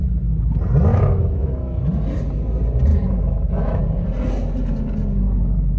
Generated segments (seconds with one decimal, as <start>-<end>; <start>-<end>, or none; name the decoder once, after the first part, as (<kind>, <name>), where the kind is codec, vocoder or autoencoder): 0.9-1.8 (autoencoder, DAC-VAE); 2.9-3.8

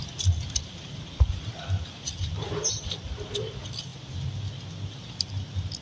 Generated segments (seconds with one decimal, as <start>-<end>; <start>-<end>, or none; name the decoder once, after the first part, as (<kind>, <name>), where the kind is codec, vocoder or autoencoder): none

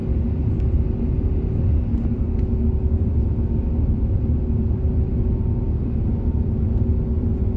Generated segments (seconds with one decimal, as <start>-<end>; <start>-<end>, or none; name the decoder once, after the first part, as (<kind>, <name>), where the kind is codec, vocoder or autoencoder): none

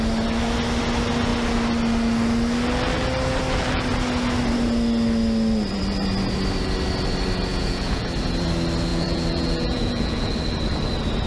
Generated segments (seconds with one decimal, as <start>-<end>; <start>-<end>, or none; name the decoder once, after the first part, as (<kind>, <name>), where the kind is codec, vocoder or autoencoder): 7.5-8.0 (vocoder, Vocos); 8.9-10.3